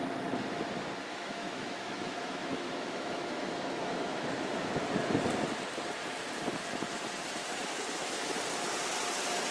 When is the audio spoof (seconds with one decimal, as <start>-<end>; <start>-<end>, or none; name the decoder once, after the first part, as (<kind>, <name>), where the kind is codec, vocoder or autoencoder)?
1.1-4.7 (autoencoder, DAC-VAE); 7.4-8.4